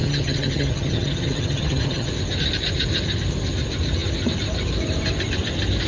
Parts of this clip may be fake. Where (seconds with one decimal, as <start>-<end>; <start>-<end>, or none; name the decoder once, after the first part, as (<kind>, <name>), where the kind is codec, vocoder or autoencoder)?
0.0-2.1 (vocoder, HiFi-GAN)